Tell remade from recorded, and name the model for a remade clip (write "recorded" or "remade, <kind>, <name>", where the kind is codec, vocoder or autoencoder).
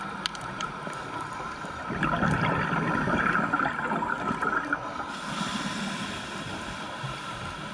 recorded